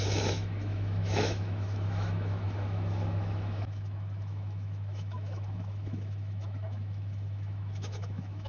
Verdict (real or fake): fake